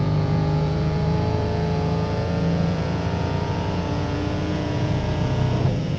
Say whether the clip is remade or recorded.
remade